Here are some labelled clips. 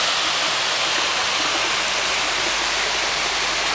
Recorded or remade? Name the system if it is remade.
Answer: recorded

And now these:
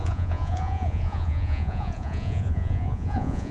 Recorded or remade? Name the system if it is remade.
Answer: remade, vocoder, Vocos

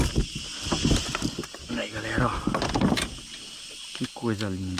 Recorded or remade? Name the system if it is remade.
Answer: recorded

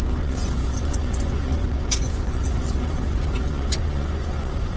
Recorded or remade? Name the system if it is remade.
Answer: remade, vocoder, Vocos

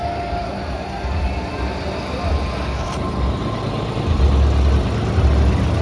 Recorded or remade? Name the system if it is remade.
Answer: recorded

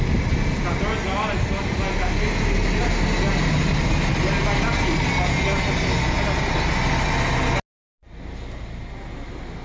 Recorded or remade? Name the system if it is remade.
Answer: recorded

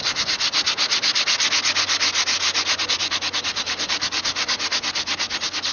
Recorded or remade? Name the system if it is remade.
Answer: recorded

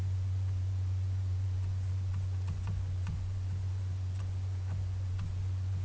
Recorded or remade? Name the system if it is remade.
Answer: remade, vocoder, Vocos